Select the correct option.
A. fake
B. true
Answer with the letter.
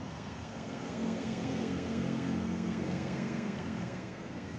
A